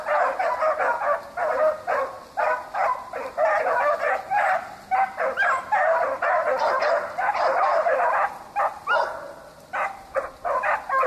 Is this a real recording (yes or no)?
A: yes